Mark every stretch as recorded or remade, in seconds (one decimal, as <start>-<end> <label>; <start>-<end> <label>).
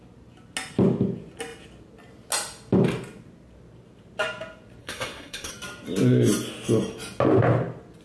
0.0-4.8 recorded; 4.8-5.5 remade; 5.5-8.0 recorded